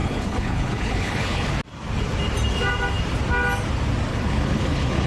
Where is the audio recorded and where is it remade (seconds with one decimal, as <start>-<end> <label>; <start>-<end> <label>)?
0.0-1.5 remade; 1.5-4.1 recorded; 4.1-5.1 remade